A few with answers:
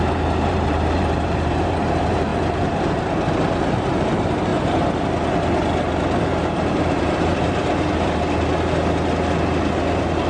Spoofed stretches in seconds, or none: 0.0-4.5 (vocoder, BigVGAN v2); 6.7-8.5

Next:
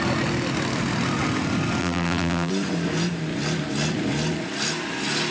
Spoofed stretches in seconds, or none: 1.8-2.5 (vocoder, BigVGAN v2)

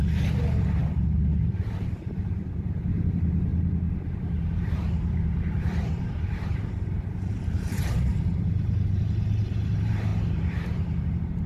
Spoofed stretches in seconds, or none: 0.0-3.5 (vocoder, BigVGAN v2); 4.2-10.1

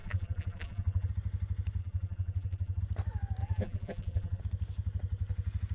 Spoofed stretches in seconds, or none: 0.0-1.1 (vocoder, BigVGAN v2); 1.8-2.8; 3.4-4.4

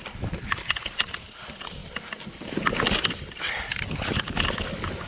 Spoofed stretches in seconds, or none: 0.0-1.8 (vocoder, BigVGAN v2); 2.3-5.1

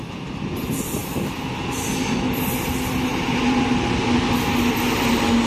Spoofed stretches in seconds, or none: 3.1-3.9 (vocoder, BigVGAN v2)

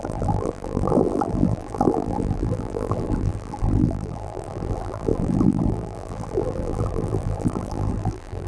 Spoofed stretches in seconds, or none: 0.0-8.5 (vocoder, BigVGAN v2)

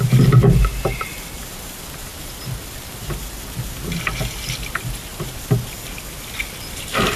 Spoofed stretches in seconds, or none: none